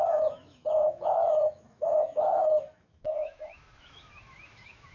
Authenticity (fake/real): fake